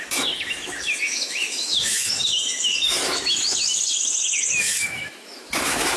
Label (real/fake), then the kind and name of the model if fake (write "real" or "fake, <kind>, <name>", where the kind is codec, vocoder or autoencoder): fake, autoencoder, DAC-VAE